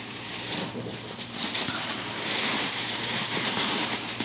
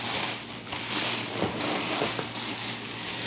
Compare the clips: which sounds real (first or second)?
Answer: second